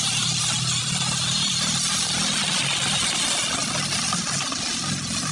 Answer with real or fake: real